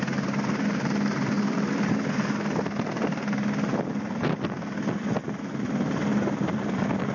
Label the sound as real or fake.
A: real